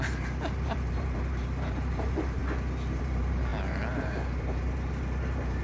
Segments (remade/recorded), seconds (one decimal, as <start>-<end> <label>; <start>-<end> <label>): 0.0-2.4 remade; 2.4-3.0 recorded; 3.0-5.6 remade